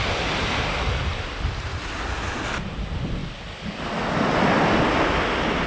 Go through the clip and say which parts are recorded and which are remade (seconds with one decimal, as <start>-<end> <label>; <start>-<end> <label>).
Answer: 0.0-3.2 recorded; 3.2-3.8 remade; 3.8-5.7 recorded